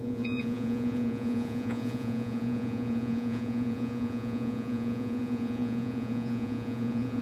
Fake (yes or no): yes